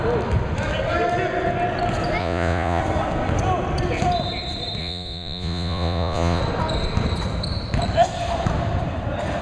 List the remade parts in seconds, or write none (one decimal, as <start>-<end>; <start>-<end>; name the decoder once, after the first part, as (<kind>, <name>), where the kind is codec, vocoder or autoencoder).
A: 2.2-2.8 (vocoder, Vocos); 4.8-6.4